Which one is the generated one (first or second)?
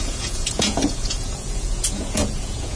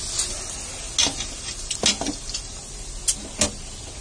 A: first